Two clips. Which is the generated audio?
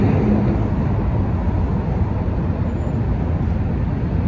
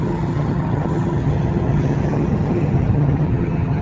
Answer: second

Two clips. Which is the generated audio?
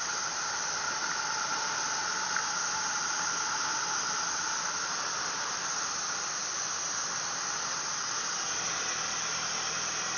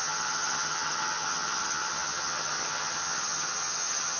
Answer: second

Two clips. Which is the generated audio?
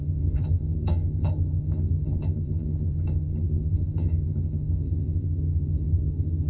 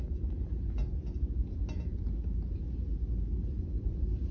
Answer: first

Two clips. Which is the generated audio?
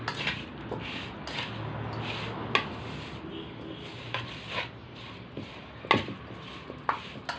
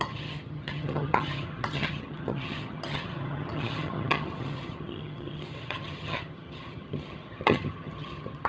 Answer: second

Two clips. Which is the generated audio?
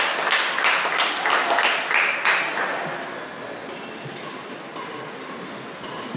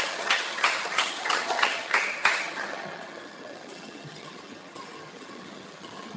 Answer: second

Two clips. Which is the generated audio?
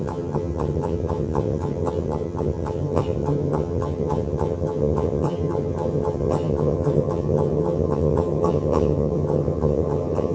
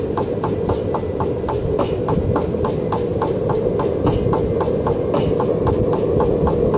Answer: first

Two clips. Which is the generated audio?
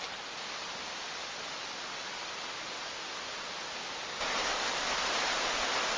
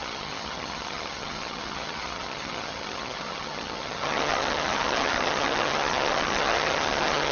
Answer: second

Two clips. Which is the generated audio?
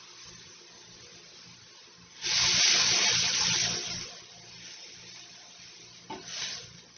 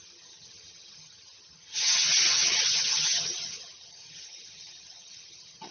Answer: second